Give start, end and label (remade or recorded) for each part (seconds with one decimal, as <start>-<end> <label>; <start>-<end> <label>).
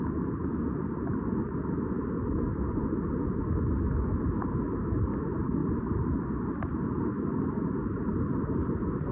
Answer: 0.0-5.6 recorded; 5.6-6.2 remade; 6.2-7.8 recorded; 7.8-8.7 remade; 8.7-9.1 recorded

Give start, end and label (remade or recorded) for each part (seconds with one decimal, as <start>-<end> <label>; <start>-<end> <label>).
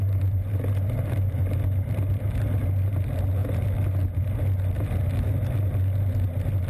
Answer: 0.0-6.7 recorded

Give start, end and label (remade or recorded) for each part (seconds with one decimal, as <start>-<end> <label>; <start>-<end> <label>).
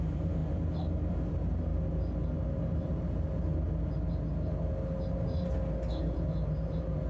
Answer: 0.0-7.1 recorded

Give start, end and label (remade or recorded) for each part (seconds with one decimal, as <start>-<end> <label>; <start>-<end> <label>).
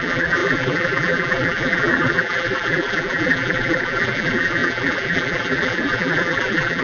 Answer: 0.0-6.8 remade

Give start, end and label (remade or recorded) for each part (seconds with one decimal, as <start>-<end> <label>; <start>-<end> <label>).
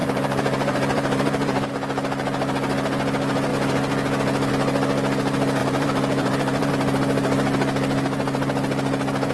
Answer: 0.0-1.7 remade; 1.7-5.6 recorded; 5.6-6.7 remade; 6.7-9.3 recorded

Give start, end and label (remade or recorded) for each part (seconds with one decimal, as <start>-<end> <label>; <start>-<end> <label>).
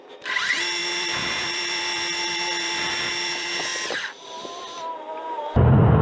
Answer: 0.0-6.0 remade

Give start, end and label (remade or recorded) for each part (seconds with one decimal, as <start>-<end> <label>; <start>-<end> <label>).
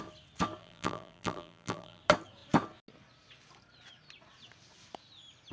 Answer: 0.0-0.6 recorded; 0.6-2.0 remade; 2.0-5.5 recorded